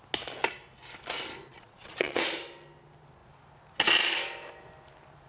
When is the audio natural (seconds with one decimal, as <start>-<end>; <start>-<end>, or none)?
0.0-1.5; 2.2-5.3